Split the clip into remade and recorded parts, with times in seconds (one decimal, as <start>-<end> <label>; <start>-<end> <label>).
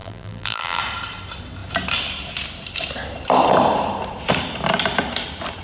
0.0-0.8 remade; 0.8-5.6 recorded